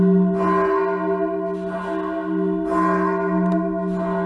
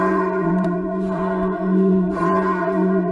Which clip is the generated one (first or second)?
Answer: second